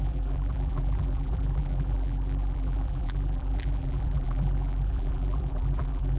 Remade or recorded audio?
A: remade